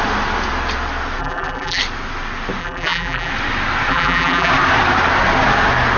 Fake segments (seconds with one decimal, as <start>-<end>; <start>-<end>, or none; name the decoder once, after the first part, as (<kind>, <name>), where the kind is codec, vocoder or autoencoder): 1.2-1.8 (vocoder, BigVGAN v2); 2.6-3.3; 3.9-4.5